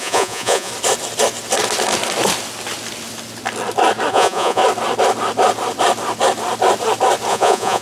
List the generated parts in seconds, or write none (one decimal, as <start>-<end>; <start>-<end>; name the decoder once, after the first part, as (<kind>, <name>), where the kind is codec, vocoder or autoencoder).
0.0-0.7 (vocoder, Vocos); 4.1-4.6; 7.3-7.8